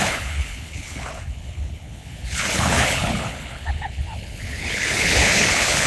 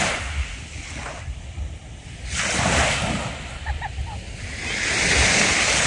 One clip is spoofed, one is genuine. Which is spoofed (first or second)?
first